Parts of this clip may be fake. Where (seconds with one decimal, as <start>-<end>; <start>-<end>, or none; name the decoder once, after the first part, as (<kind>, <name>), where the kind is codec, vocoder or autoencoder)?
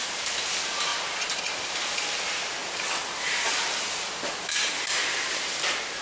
0.9-1.4 (vocoder, BigVGAN v2); 2.6-5.4